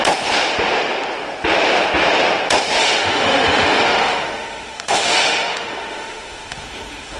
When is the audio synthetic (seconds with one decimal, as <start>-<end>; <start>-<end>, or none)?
2.8-7.2